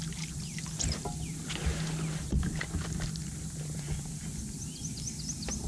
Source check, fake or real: real